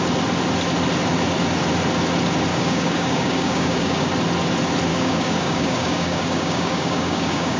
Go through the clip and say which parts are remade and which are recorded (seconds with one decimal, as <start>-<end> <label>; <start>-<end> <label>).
0.0-2.5 recorded; 2.5-4.1 remade; 4.1-4.9 recorded; 4.9-7.6 remade